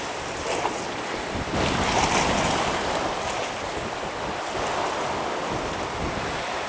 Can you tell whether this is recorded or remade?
recorded